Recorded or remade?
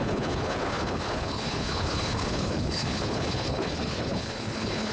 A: remade